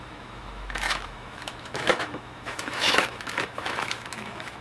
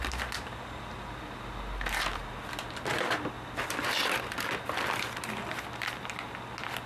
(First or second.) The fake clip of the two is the first